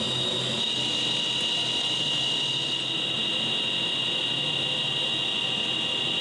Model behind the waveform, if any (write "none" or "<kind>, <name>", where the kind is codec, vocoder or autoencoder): none